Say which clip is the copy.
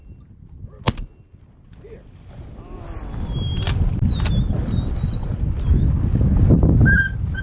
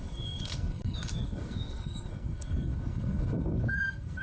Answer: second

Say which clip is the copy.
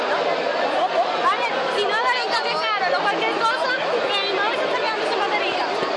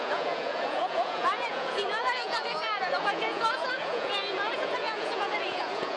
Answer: second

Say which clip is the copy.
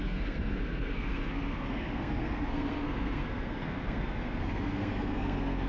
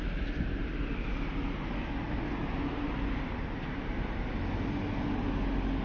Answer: first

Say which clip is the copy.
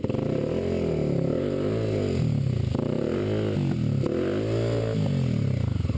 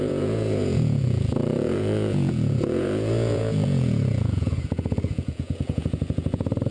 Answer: second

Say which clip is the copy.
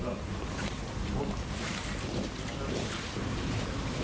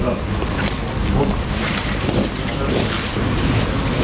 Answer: first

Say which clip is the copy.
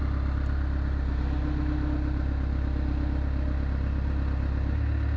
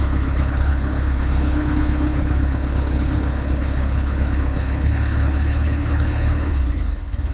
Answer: second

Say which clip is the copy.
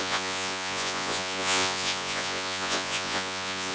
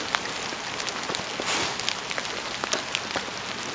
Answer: first